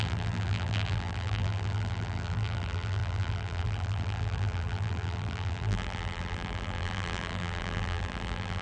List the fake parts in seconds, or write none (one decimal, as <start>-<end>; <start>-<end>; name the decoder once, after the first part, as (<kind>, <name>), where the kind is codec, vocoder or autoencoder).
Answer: 0.0-8.6 (vocoder, BigVGAN v2)